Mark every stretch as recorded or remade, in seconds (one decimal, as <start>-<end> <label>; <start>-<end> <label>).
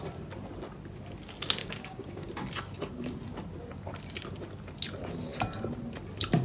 0.0-1.6 recorded; 1.6-2.3 remade; 2.3-6.4 recorded